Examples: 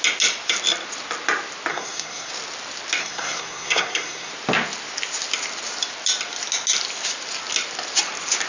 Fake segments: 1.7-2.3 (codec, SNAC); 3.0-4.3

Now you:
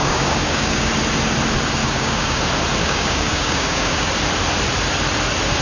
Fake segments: 0.0-0.9 (codec, DAC); 1.8-2.4; 2.8-4.1

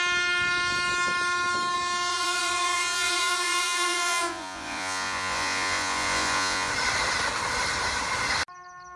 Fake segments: 2.1-6.7 (vocoder, Vocos)

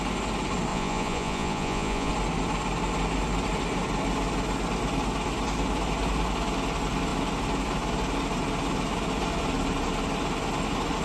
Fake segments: 0.7-2.1 (vocoder, Vocos)

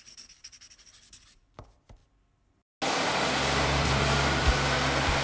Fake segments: 0.0-2.0 (vocoder, BigVGAN v2); 3.1-5.2